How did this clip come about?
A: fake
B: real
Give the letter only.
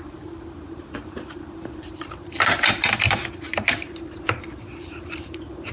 A